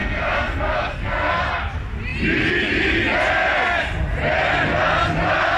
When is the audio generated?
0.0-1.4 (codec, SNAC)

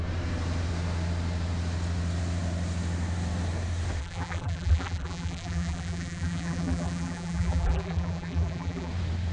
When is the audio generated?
4.0-8.9 (vocoder, BigVGAN v2)

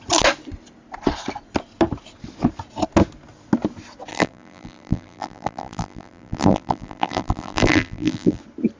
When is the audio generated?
4.1-8.4 (vocoder, BigVGAN v2)

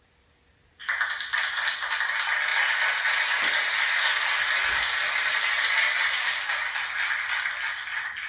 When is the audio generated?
6.2-6.7 (codec, DAC)

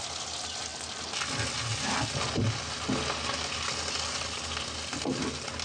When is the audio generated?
none

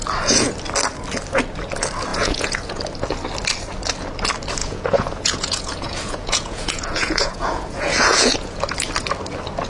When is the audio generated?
2.1-2.8 (vocoder, Vocos); 4.6-8.6